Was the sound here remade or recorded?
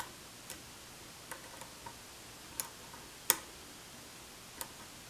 recorded